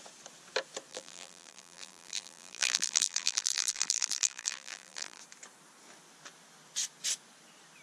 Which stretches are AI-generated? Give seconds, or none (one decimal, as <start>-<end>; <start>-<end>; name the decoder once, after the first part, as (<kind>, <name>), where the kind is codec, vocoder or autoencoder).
0.9-5.2 (vocoder, BigVGAN v2)